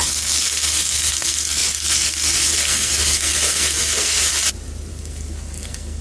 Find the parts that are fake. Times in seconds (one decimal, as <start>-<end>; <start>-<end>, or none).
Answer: 0.0-4.3; 4.9-6.0